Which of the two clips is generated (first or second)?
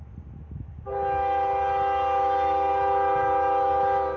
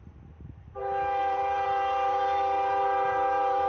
second